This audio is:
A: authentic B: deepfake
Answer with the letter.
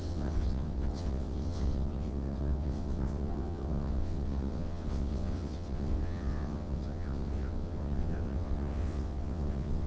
B